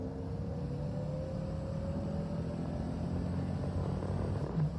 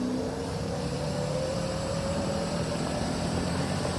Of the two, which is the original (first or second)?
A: first